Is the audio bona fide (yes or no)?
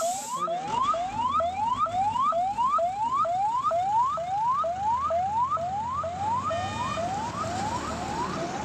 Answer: yes